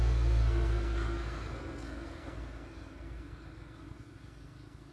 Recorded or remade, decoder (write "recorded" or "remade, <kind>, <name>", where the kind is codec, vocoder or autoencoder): remade, codec, SNAC